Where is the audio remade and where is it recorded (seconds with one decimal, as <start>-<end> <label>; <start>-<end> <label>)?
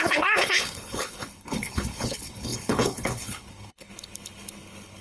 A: 0.0-5.0 remade